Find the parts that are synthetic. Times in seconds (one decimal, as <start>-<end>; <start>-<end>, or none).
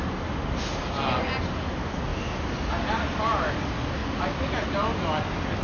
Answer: none